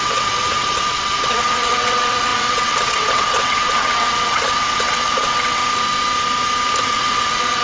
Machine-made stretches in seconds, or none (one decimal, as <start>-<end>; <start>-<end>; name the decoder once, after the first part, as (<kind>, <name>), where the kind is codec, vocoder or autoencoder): 0.0-5.6 (vocoder, WaveNeXt); 6.8-7.6